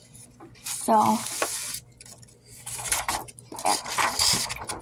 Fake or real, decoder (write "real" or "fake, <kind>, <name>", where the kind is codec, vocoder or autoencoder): real